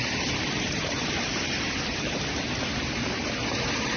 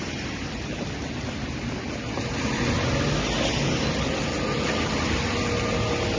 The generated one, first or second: first